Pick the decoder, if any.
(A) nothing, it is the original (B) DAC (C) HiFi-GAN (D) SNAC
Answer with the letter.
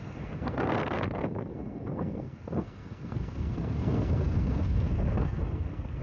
D